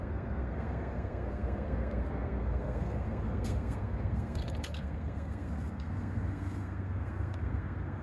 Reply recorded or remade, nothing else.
remade